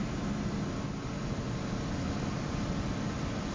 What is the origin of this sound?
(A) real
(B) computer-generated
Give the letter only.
A